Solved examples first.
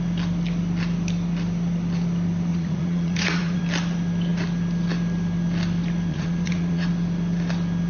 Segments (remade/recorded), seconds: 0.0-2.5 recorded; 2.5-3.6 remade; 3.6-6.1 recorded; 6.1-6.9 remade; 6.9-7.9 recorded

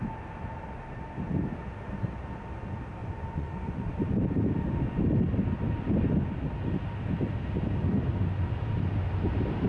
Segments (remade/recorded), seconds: 0.0-3.0 recorded; 3.0-3.9 remade; 3.9-9.7 recorded

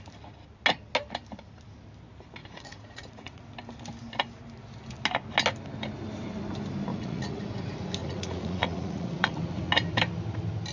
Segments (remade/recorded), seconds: 0.0-2.4 recorded; 2.4-3.4 remade; 3.4-6.9 recorded; 6.9-7.5 remade; 7.5-8.0 recorded; 8.0-9.4 remade; 9.4-10.7 recorded